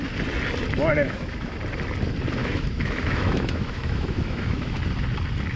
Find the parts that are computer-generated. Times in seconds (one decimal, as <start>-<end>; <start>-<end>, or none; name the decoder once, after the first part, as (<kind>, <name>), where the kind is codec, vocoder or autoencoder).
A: 0.9-1.5 (autoencoder, DAC-VAE); 2.4-4.8